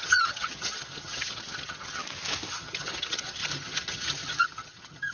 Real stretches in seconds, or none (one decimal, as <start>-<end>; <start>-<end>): 2.0-2.5